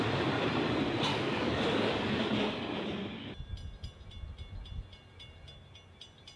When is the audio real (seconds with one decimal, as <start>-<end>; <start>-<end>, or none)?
0.0-1.1; 2.1-6.4